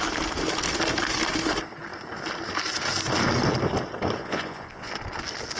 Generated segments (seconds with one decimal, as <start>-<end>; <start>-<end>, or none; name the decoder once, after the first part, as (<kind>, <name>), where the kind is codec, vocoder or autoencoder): 4.2-4.9 (vocoder, Vocos)